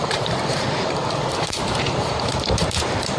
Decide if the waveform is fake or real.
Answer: fake